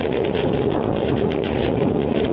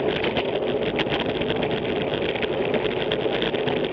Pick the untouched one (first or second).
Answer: second